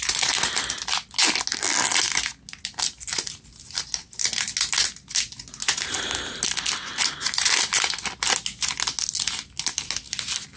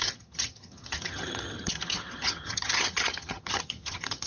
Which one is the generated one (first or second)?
second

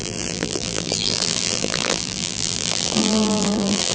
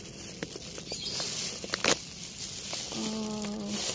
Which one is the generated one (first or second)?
first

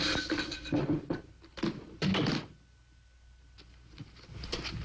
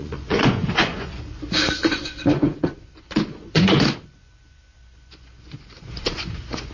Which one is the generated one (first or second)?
second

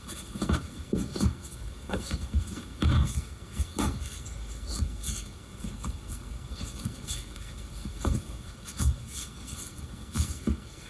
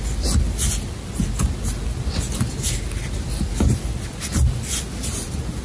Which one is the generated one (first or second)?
first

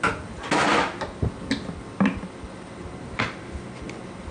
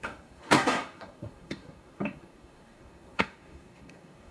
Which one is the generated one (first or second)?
second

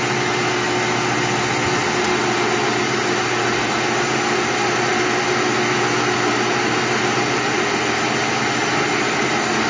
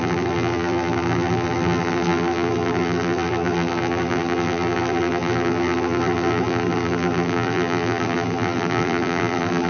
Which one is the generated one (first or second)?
second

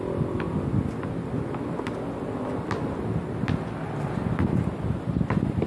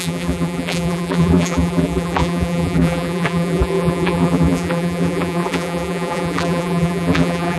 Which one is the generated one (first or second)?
second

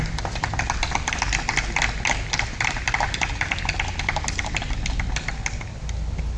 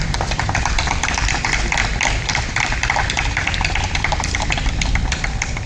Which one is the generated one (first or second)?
second